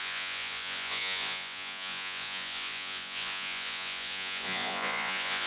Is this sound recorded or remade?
remade